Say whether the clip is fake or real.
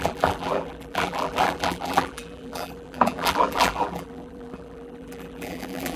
fake